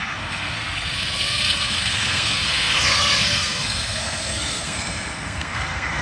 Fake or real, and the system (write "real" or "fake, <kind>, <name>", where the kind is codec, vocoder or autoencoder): fake, codec, SNAC